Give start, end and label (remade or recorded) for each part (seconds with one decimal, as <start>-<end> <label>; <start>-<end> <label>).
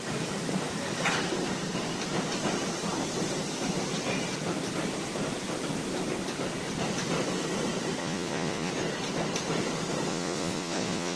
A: 0.0-8.0 recorded; 8.0-8.7 remade; 8.7-10.1 recorded; 10.1-11.2 remade